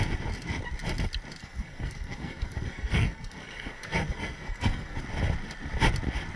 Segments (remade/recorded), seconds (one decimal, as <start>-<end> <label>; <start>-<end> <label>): 0.0-1.4 recorded; 1.4-5.0 remade; 5.0-6.4 recorded